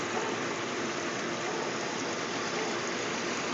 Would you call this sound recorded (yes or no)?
yes